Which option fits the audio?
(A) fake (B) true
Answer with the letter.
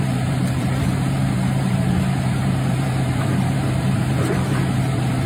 A